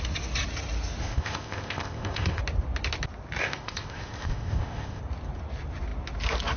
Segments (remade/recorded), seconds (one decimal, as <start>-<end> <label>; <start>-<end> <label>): 0.0-1.0 recorded; 1.0-2.4 remade; 2.4-3.4 recorded; 3.4-5.0 remade; 5.0-6.6 recorded